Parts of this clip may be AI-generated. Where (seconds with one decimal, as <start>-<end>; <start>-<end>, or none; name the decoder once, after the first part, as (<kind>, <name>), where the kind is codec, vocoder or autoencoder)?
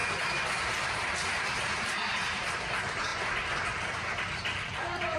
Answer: 0.6-3.1 (vocoder, BigVGAN v2); 4.1-5.2